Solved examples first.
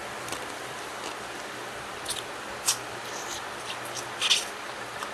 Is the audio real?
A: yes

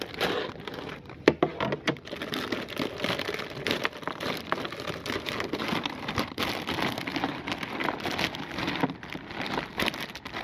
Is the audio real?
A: yes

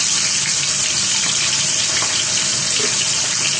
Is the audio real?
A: yes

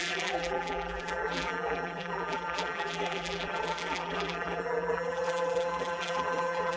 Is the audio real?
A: no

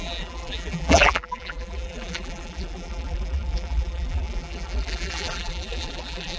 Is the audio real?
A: no